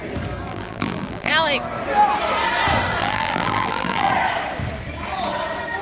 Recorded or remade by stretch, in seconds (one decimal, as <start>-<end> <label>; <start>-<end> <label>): 0.0-0.5 recorded; 0.5-1.3 remade; 1.3-3.0 recorded; 3.0-4.1 remade; 4.1-5.8 recorded